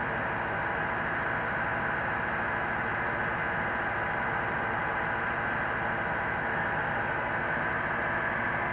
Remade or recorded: recorded